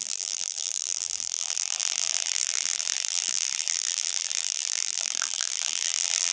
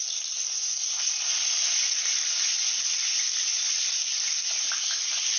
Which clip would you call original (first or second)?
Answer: second